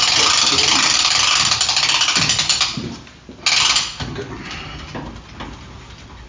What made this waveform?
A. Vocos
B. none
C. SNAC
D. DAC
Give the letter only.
B